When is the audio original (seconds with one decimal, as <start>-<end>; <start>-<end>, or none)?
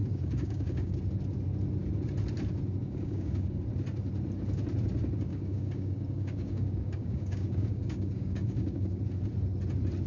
1.0-2.8; 3.6-5.3; 9.0-10.1